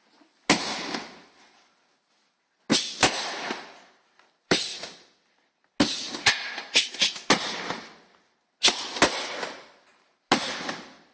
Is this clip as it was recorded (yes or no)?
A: yes